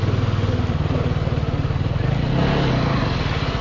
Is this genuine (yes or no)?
yes